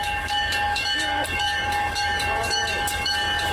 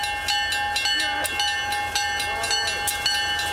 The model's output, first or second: first